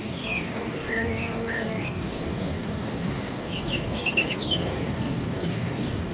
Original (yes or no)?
no